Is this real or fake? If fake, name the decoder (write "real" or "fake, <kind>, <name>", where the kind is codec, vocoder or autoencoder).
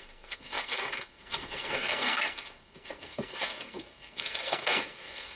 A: fake, codec, SNAC